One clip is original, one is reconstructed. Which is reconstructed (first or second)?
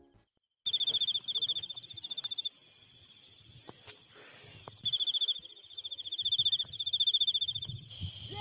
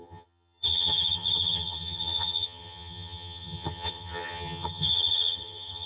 second